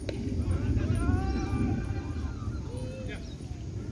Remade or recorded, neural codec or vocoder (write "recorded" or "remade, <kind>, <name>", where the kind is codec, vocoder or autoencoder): recorded